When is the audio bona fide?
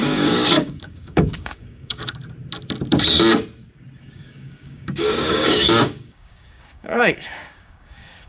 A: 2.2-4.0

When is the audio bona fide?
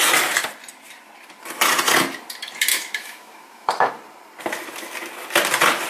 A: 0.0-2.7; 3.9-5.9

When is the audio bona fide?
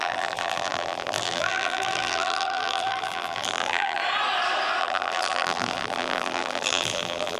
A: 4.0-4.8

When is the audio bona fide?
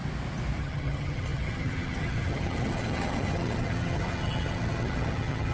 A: 0.0-0.6